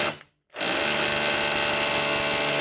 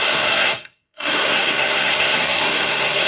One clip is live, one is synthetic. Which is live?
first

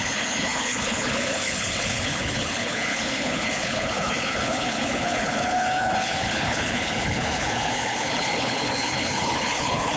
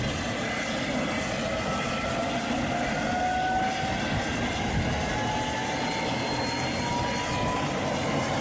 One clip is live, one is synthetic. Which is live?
second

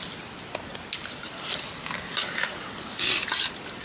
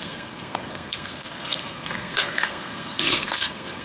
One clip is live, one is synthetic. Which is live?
first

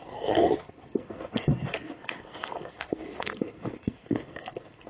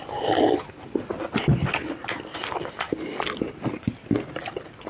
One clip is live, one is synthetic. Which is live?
second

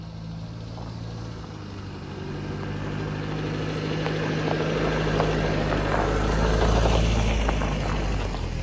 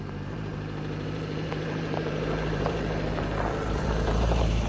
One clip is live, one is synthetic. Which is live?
first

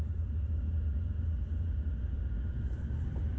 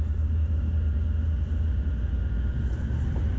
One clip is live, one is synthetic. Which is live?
second